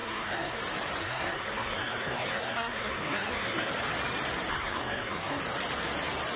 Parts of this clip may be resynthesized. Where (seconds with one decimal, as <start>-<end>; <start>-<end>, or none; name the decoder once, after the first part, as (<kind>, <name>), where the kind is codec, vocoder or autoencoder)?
0.0-0.6 (codec, SNAC); 1.0-3.7; 4.5-5.4